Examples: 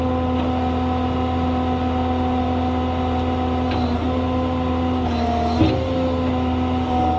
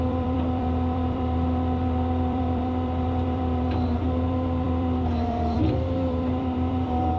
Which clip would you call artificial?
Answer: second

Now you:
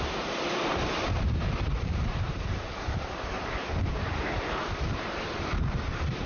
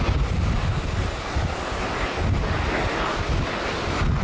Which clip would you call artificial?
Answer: first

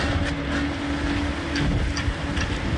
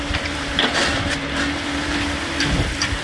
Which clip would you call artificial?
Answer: second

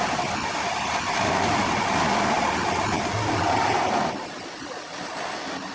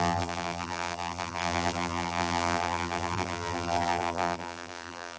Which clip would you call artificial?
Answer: second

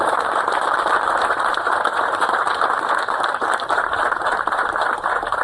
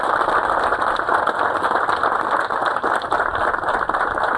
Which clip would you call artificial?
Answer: first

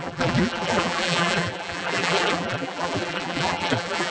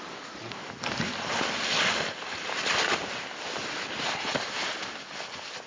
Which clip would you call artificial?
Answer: first